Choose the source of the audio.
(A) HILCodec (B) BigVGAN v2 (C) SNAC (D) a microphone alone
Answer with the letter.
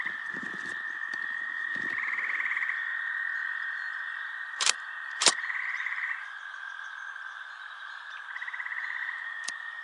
B